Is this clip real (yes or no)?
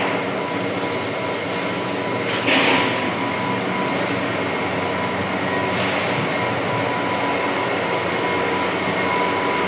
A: yes